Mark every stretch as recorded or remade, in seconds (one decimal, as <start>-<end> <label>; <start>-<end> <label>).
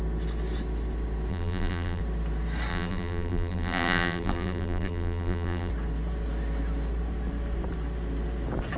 0.0-1.3 recorded; 1.3-2.0 remade; 2.0-2.7 recorded; 2.7-5.7 remade; 5.7-8.8 recorded